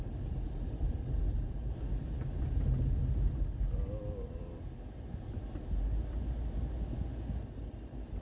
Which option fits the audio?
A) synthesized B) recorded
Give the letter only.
B